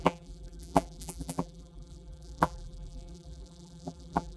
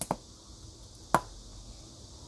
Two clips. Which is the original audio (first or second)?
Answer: second